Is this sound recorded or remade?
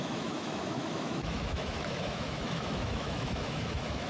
remade